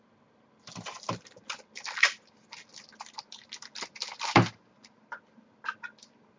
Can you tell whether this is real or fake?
real